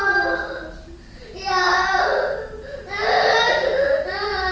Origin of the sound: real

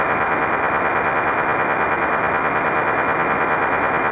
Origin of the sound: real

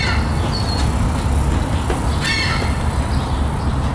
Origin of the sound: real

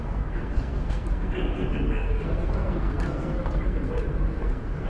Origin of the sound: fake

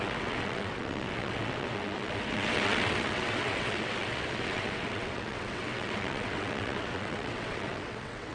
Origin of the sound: fake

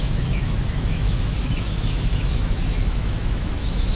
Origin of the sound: fake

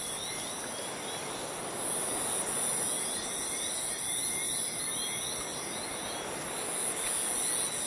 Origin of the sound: real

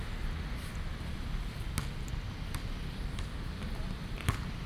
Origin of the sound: real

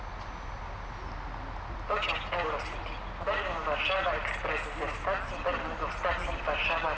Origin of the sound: real